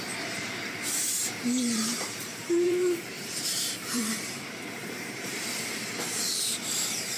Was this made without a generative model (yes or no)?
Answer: no